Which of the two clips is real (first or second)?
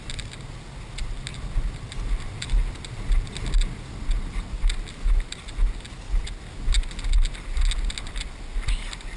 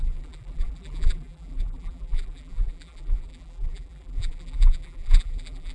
first